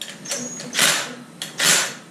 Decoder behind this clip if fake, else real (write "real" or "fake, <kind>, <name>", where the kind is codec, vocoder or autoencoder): real